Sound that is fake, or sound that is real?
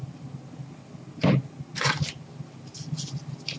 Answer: real